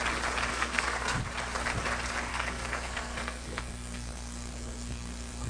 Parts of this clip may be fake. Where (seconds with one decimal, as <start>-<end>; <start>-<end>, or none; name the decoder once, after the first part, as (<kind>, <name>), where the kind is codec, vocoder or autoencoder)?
0.5-1.2 (codec, SNAC); 2.3-5.5